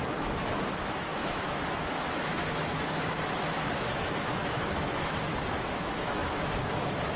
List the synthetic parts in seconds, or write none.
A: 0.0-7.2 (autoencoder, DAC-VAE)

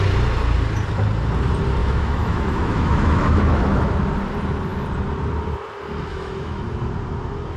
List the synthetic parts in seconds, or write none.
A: 1.8-3.9 (autoencoder, DAC-VAE); 6.1-6.6

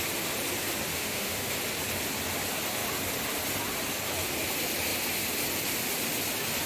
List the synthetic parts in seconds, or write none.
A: 0.9-1.5 (autoencoder, DAC-VAE)

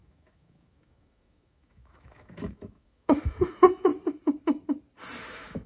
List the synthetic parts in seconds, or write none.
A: 0.0-3.9 (autoencoder, DAC-VAE); 5.2-5.7

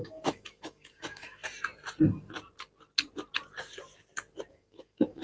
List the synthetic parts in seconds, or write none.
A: 0.0-1.4 (autoencoder, DAC-VAE); 4.5-5.2

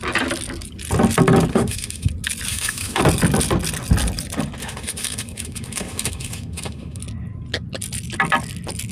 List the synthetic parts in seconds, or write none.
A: 1.5-2.1 (autoencoder, DAC-VAE); 2.5-3.0; 4.6-7.0